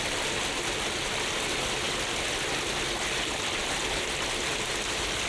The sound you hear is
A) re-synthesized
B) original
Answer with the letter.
B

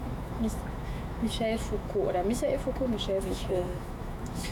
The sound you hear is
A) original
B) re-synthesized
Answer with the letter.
B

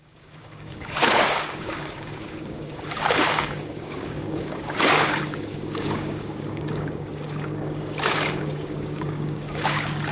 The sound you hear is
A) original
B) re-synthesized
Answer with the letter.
B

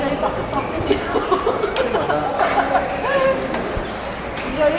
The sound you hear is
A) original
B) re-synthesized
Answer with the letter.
A